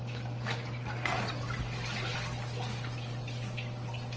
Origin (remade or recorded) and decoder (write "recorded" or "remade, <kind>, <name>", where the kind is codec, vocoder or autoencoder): recorded